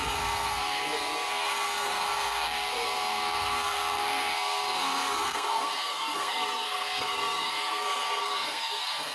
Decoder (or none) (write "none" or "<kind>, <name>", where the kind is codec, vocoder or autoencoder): codec, SNAC